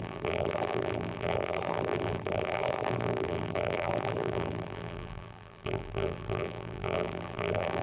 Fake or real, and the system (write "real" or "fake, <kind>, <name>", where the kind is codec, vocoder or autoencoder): fake, vocoder, BigVGAN v2